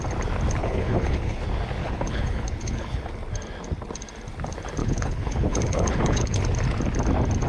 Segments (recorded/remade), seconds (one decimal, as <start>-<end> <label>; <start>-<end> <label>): 0.0-0.6 recorded; 0.6-1.4 remade; 1.4-1.8 recorded; 1.8-3.1 remade; 3.1-4.8 recorded; 4.8-6.4 remade; 6.4-7.5 recorded